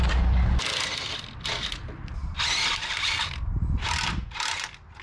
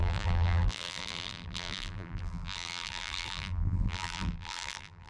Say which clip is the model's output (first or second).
second